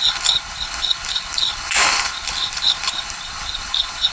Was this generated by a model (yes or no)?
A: yes